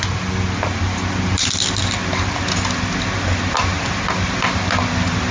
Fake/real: real